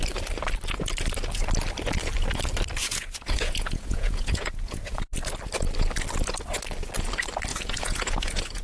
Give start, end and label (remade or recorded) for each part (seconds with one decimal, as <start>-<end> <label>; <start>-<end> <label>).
0.0-2.8 recorded; 2.8-5.0 remade; 5.0-7.5 recorded; 7.5-8.6 remade